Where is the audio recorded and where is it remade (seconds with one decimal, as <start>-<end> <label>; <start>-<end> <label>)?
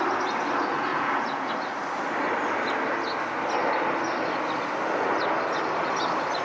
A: 0.0-0.9 recorded; 0.9-1.5 remade; 1.5-6.4 recorded